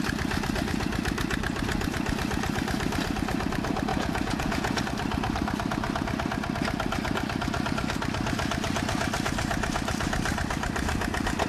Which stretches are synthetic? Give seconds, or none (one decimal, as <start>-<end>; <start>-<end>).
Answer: 3.9-4.8